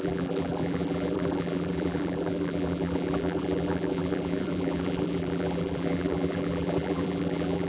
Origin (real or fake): fake